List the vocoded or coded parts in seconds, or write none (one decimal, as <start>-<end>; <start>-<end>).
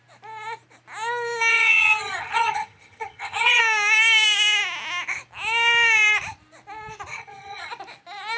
1.5-3.6; 7.1-7.7